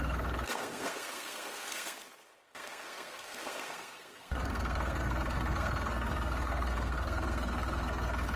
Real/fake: fake